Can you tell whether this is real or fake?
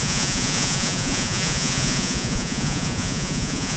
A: fake